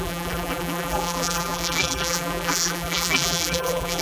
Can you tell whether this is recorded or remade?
remade